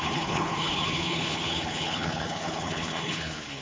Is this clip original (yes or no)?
no